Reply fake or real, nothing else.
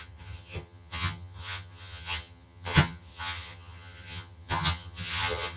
fake